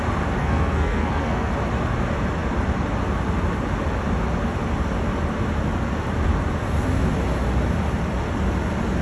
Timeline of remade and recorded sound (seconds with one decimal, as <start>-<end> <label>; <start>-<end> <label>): 0.0-0.4 recorded; 0.4-1.5 remade; 1.5-9.0 recorded